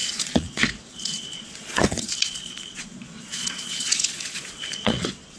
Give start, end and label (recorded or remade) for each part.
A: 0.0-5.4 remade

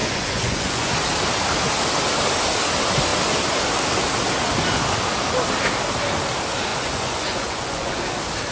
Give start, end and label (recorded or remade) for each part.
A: 0.0-0.9 remade; 0.9-6.7 recorded; 6.7-8.0 remade; 8.0-8.5 recorded

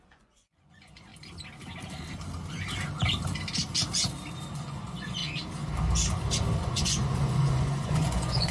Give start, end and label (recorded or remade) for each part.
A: 0.0-1.1 remade; 1.1-4.5 recorded; 4.5-5.2 remade; 5.2-6.6 recorded; 6.6-8.5 remade

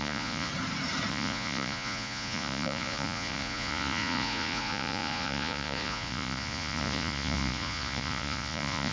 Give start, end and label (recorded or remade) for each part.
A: 0.0-0.5 remade; 0.5-1.1 recorded; 1.1-8.9 remade

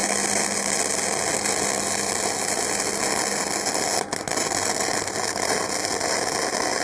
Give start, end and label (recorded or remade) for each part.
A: 0.0-6.8 recorded

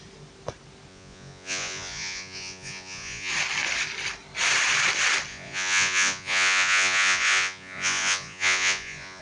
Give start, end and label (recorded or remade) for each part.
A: 0.0-0.9 recorded; 0.9-3.3 remade; 3.3-5.3 recorded; 5.3-9.2 remade

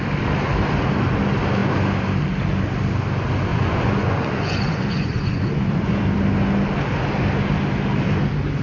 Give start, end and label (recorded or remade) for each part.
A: 0.0-3.5 recorded; 3.5-6.0 remade; 6.0-8.6 recorded